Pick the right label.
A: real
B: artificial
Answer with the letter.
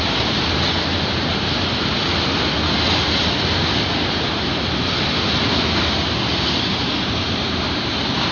A